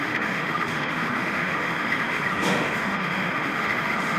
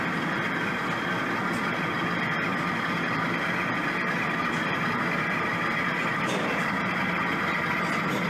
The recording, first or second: second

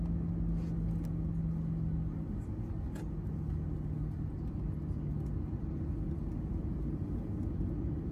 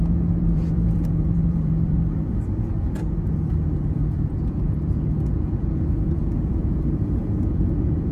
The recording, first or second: first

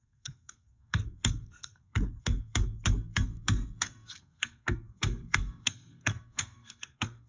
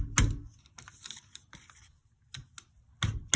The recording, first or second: second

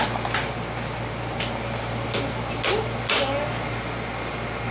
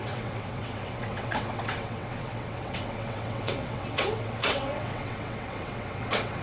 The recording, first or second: first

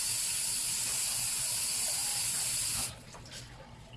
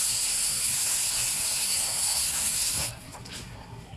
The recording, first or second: first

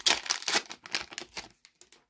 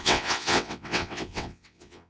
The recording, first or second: first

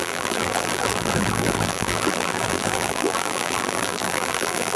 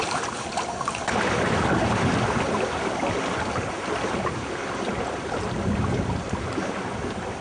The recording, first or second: second